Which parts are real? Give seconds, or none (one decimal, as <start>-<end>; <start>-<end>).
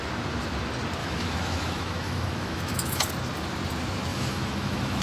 0.0-1.0; 3.1-4.1